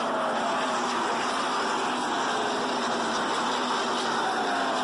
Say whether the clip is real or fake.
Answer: real